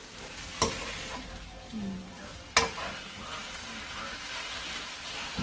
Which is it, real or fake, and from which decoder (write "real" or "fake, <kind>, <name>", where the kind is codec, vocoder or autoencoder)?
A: real